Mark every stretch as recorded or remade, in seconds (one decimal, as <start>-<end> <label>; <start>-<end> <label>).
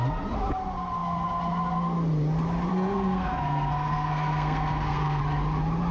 0.0-2.7 recorded; 2.7-5.2 remade; 5.2-5.9 recorded